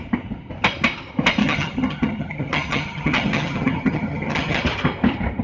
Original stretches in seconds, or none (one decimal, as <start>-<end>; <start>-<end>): 0.0-1.4; 4.6-5.4